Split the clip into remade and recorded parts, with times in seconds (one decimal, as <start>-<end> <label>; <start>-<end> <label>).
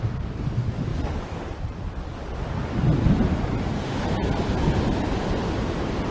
0.0-0.9 recorded; 0.9-4.0 remade; 4.0-6.1 recorded